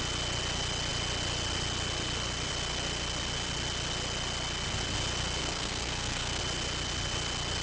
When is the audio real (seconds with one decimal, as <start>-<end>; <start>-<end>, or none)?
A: 0.0-5.4; 6.4-7.6